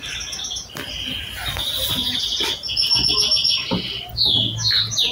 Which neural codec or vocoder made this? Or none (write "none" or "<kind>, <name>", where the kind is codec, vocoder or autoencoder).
none